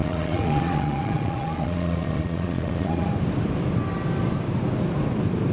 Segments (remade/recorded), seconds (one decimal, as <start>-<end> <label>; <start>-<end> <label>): 0.0-3.1 remade; 3.1-5.5 recorded